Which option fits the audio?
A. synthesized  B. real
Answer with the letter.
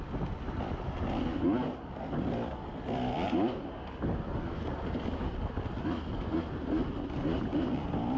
B